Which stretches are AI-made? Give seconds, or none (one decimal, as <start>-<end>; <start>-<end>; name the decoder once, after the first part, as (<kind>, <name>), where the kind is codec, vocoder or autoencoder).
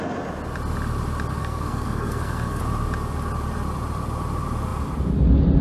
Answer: 1.4-2.6 (codec, SNAC)